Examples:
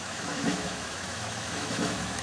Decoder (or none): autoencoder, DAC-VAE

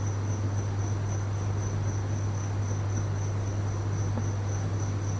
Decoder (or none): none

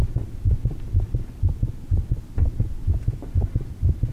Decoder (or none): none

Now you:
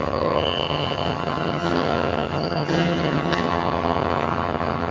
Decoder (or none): vocoder, HiFi-GAN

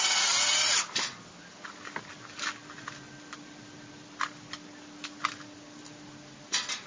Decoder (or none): none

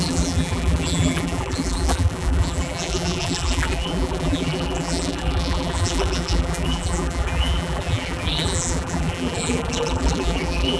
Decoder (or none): vocoder, BigVGAN v2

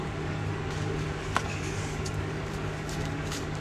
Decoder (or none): codec, DAC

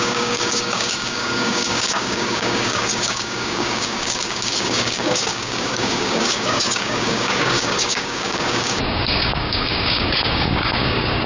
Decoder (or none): codec, DAC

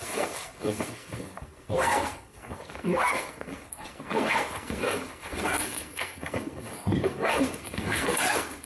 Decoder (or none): codec, SNAC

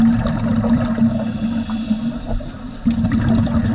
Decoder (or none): none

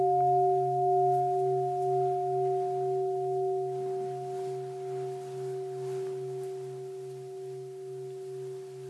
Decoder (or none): none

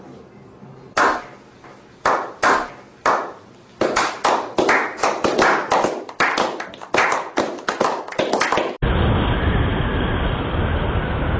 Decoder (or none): none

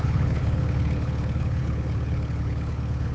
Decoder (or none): codec, HILCodec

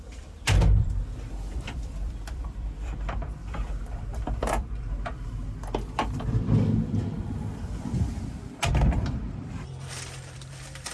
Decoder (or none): vocoder, BigVGAN v2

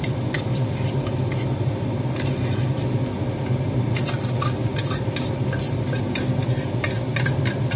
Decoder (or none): none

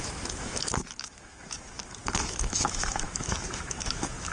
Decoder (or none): autoencoder, DAC-VAE